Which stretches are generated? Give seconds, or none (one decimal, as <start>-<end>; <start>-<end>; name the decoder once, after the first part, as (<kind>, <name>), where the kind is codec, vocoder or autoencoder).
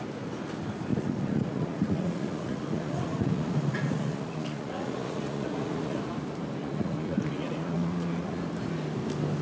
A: 0.9-6.0 (vocoder, Vocos); 6.6-8.4